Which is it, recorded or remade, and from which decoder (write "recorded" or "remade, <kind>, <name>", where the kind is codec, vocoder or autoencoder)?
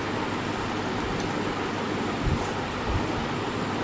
recorded